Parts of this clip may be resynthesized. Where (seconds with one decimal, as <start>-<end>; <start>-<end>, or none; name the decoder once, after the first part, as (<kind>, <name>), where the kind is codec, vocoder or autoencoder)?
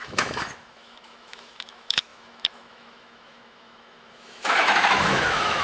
0.0-5.6 (autoencoder, DAC-VAE)